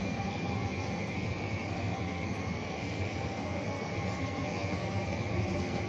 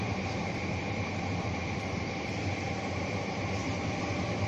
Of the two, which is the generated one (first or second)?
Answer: first